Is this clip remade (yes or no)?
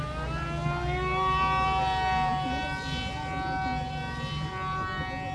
no